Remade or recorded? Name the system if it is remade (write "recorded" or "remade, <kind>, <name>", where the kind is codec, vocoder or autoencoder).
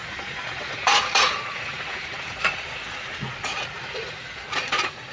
remade, vocoder, Vocos